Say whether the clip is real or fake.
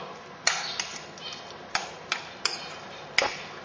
real